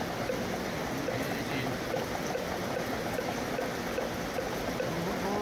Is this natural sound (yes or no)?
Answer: yes